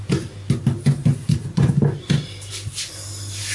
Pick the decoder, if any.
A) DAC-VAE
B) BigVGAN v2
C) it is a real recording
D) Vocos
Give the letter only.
C